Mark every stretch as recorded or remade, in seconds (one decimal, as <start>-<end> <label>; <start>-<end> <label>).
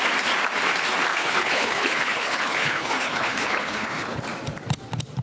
0.0-1.1 recorded; 1.1-4.2 remade; 4.2-5.2 recorded